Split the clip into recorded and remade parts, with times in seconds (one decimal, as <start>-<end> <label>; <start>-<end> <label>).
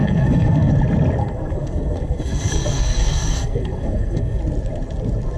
0.0-0.7 remade; 0.7-1.2 recorded; 1.2-4.4 remade; 4.4-5.4 recorded